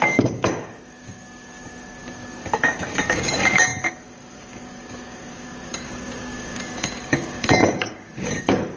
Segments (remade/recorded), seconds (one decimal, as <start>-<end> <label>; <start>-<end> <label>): 0.0-8.8 remade